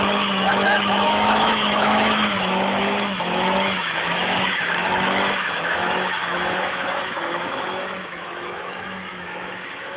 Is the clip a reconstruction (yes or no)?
yes